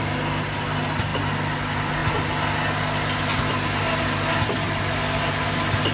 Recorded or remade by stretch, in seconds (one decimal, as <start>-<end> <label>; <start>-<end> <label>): 0.0-5.9 recorded